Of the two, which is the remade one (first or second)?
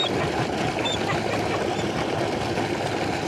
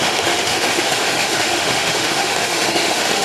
second